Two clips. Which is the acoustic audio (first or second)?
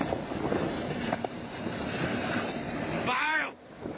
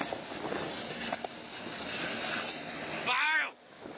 second